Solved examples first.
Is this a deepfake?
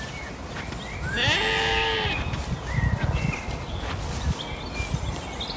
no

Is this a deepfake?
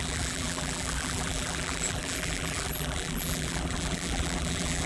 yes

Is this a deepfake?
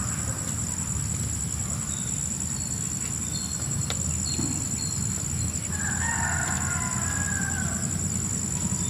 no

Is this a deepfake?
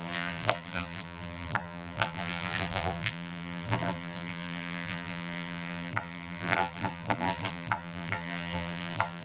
yes